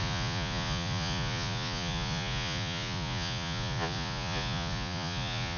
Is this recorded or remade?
remade